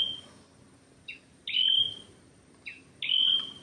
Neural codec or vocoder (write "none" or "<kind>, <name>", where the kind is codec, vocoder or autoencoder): none